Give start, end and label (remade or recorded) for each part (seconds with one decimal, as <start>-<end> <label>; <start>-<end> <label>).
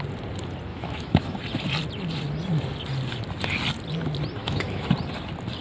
0.0-0.7 recorded; 0.7-1.4 remade; 1.4-4.4 recorded; 4.4-4.9 remade; 4.9-5.6 recorded